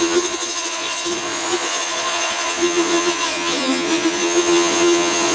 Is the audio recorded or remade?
remade